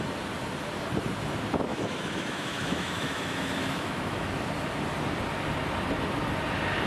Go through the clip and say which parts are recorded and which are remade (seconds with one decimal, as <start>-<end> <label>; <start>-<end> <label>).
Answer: 0.0-1.7 recorded; 1.7-4.5 remade; 4.5-6.9 recorded